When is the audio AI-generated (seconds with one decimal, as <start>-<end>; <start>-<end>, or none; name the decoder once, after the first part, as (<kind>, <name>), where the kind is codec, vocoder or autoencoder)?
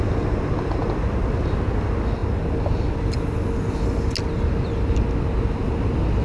none